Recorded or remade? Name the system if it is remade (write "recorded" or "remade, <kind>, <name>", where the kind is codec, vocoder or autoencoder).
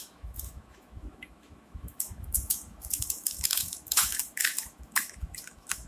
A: remade, autoencoder, DAC-VAE